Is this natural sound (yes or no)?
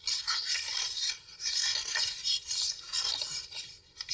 yes